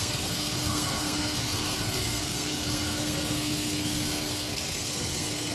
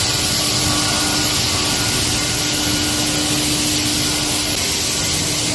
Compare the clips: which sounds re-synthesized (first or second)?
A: first